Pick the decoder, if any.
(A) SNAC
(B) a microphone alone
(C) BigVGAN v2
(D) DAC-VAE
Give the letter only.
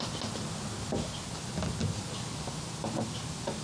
B